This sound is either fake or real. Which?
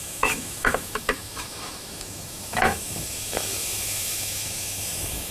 fake